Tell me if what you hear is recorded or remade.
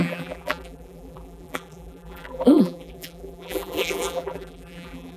remade